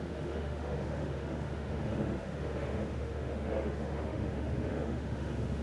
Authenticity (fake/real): fake